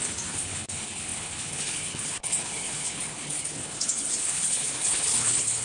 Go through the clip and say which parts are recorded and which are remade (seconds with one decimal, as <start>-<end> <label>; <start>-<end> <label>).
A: 0.0-5.6 remade